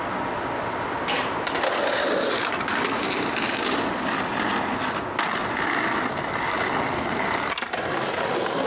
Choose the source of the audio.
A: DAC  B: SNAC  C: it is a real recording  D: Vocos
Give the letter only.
C